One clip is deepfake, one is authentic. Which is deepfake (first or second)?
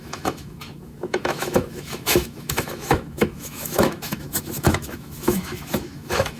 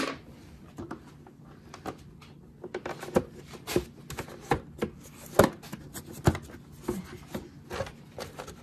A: first